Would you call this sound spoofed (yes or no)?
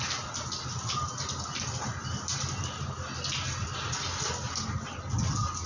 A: no